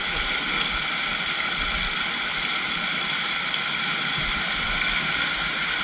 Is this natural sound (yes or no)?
yes